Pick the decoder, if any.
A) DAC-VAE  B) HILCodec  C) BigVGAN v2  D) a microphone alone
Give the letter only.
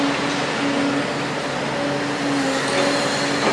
D